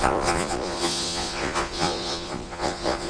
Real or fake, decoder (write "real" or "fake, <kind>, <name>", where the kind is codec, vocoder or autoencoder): fake, vocoder, Vocos